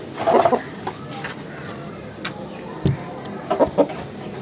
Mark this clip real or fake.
real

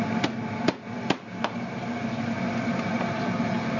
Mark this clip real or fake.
real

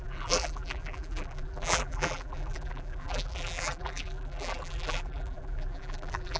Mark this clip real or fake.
fake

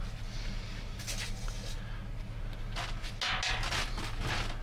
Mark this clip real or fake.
real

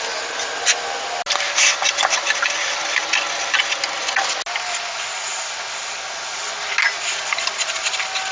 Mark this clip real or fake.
real